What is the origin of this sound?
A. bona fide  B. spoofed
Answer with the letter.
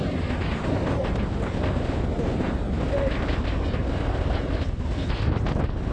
A